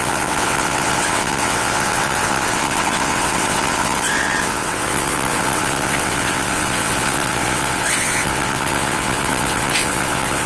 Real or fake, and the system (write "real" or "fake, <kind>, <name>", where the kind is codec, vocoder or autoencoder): fake, vocoder, WaveNeXt